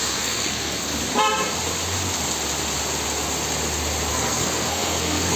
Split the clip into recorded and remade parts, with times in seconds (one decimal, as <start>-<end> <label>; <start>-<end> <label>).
0.0-0.9 remade; 0.9-4.1 recorded; 4.1-5.4 remade